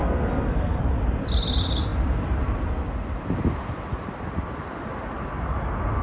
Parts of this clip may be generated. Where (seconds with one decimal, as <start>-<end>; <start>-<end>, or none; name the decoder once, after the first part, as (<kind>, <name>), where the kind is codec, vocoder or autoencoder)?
0.0-0.8 (codec, SNAC)